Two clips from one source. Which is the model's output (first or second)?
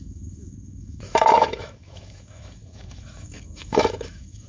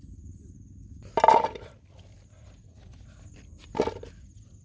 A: first